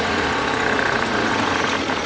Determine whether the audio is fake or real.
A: fake